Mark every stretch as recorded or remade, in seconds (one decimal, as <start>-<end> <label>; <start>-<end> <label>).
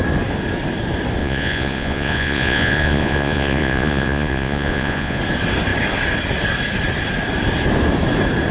0.0-1.2 recorded; 1.2-5.2 remade; 5.2-8.5 recorded